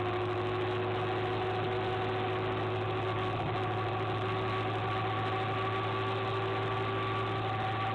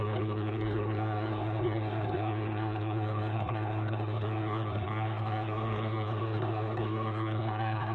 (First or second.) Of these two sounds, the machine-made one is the second